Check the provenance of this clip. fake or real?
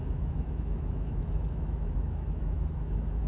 fake